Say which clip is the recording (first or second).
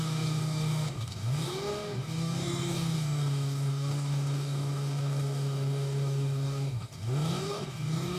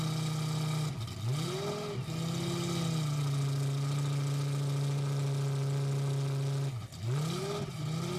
second